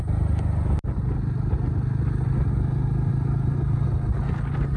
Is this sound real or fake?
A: real